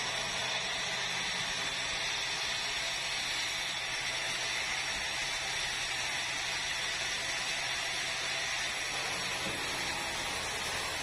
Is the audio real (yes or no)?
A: yes